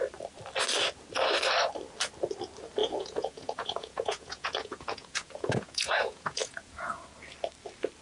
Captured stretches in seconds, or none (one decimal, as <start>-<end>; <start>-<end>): 0.0-2.8; 7.0-8.0